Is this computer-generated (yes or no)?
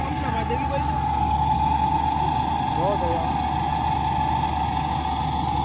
no